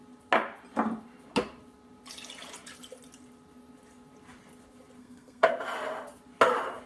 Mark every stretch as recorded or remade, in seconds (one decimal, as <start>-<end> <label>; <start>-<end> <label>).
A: 0.0-5.0 recorded; 5.0-5.5 remade; 5.5-6.9 recorded